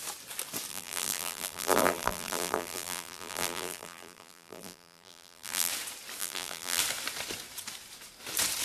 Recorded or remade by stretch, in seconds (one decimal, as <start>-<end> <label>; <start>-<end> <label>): 0.0-0.7 recorded; 0.7-5.7 remade; 5.7-6.2 recorded; 6.2-6.8 remade; 6.8-8.6 recorded